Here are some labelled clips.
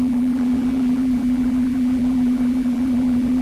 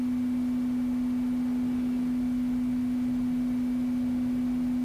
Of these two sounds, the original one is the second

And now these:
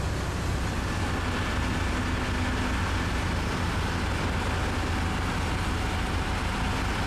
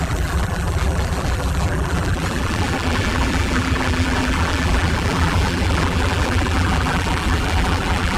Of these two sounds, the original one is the first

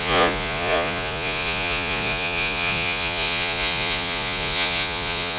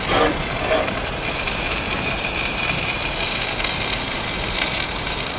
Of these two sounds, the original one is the second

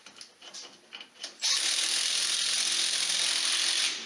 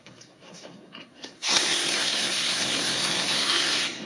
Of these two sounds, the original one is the first